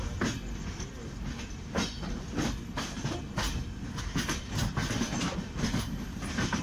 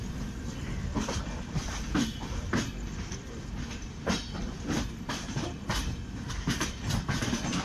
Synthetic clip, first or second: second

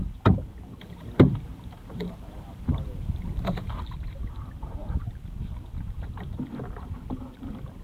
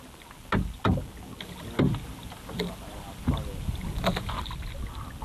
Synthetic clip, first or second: first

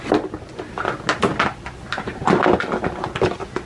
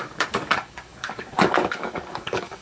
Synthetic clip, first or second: second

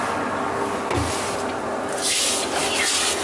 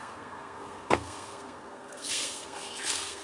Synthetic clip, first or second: second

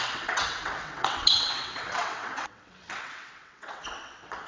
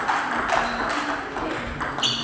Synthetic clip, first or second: first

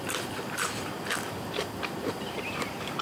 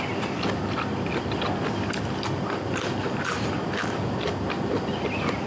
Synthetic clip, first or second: first